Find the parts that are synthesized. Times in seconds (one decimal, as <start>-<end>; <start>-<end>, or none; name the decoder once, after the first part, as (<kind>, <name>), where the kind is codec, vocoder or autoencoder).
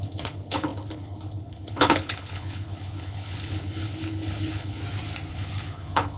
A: 0.0-4.8 (codec, HILCodec); 5.3-6.2